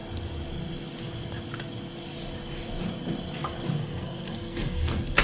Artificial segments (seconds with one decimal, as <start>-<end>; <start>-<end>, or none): 3.8-5.2